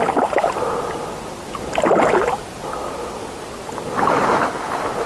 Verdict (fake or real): real